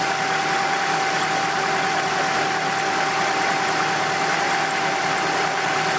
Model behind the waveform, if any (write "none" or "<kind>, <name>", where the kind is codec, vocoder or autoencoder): none